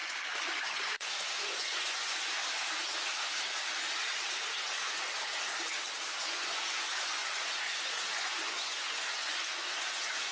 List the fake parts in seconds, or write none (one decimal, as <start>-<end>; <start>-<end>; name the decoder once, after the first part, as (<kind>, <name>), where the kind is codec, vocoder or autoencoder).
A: 0.0-2.4 (vocoder, Vocos); 6.2-10.3